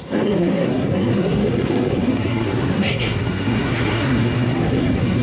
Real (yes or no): no